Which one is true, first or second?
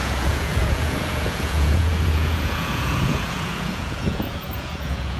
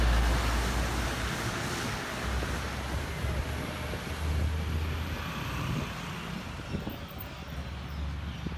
second